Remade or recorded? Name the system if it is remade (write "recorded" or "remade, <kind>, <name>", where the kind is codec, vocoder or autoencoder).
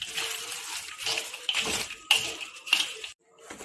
remade, vocoder, BigVGAN v2